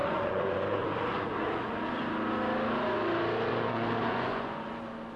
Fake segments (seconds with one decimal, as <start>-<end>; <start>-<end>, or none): 0.0-1.7; 3.5-4.7